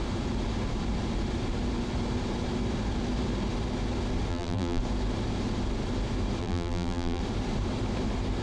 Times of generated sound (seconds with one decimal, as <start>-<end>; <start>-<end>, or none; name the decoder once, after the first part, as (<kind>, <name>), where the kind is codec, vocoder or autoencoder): 4.3-4.8 (vocoder, BigVGAN v2); 6.4-7.2